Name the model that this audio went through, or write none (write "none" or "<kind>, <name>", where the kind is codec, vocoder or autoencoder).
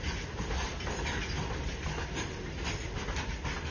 none